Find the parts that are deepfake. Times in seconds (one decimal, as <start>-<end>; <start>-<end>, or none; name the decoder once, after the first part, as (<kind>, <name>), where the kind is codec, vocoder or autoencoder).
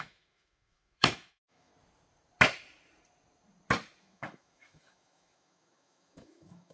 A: 0.0-1.7 (autoencoder, DAC-VAE); 4.0-6.7